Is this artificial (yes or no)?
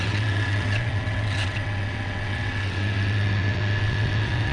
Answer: yes